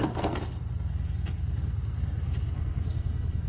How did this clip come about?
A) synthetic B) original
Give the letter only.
A